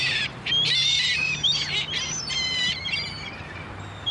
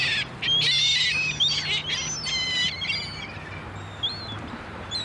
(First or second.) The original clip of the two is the second